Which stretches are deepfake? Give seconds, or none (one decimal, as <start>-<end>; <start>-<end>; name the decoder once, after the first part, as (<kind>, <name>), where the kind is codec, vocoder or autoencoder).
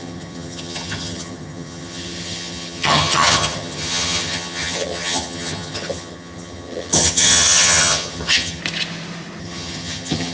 0.0-8.6 (vocoder, HiFi-GAN); 9.4-10.3